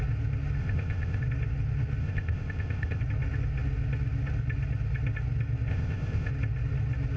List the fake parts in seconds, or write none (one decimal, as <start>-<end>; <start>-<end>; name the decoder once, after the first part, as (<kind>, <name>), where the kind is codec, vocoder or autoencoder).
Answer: 0.6-1.2 (codec, ZipCodec); 2.0-3.0; 5.7-6.3